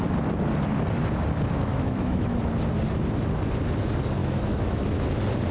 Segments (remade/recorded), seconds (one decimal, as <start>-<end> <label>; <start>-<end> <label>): 0.0-1.7 recorded; 1.7-2.4 remade; 2.4-4.2 recorded; 4.2-4.8 remade; 4.8-5.5 recorded